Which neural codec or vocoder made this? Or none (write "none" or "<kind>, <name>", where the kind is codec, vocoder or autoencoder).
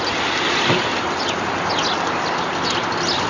none